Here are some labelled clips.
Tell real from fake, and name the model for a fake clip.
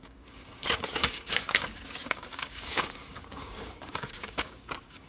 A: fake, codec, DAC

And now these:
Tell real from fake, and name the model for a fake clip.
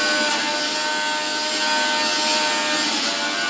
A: real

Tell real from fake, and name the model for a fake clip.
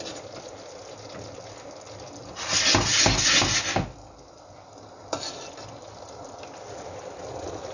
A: real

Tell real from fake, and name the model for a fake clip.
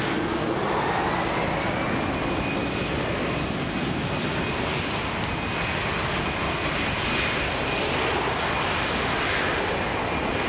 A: real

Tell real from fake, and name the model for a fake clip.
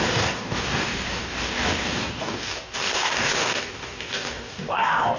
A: fake, codec, DAC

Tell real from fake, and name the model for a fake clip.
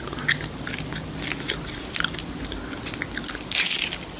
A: real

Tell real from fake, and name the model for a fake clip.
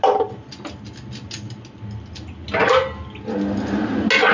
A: real